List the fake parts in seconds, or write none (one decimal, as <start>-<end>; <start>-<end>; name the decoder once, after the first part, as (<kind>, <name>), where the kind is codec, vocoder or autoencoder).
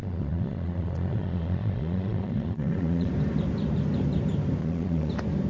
0.0-3.1 (vocoder, Vocos); 4.6-5.1